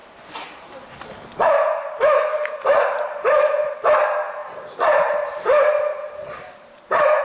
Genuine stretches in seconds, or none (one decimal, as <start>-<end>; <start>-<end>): 3.7-4.4